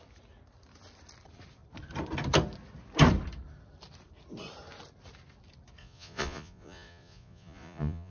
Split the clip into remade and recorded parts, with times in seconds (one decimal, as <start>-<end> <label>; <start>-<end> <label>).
0.0-5.8 recorded; 5.8-8.1 remade